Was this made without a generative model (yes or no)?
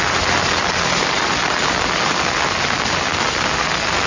yes